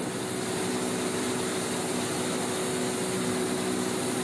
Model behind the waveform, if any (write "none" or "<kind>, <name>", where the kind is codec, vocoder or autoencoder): none